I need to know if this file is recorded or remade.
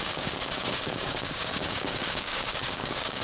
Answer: remade